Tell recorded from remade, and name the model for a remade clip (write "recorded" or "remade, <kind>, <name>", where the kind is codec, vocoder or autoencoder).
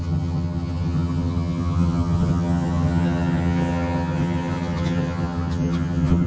remade, vocoder, HiFi-GAN